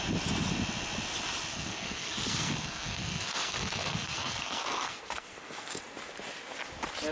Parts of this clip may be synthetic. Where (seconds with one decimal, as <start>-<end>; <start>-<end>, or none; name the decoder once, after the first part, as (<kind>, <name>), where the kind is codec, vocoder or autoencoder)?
1.5-5.8 (codec, SNAC)